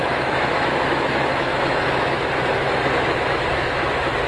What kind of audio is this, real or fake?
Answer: fake